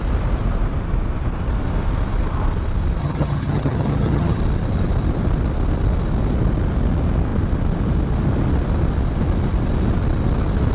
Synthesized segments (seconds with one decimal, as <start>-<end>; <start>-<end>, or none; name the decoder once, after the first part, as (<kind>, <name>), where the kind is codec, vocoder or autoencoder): 3.0-4.4 (vocoder, HiFi-GAN)